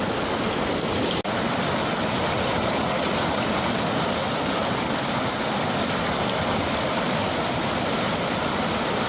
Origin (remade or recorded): recorded